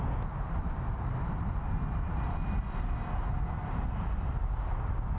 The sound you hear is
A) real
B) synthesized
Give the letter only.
A